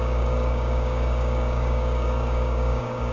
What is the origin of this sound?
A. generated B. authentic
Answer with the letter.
A